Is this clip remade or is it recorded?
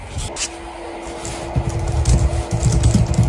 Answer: recorded